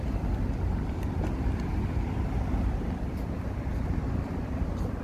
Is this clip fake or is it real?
real